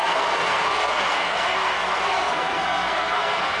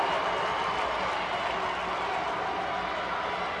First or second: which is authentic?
second